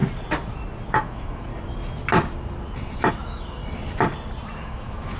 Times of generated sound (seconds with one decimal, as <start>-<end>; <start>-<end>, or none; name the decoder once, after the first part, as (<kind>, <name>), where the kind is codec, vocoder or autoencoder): 0.9-1.5 (autoencoder, DAC-VAE); 3.1-3.6; 4.6-5.2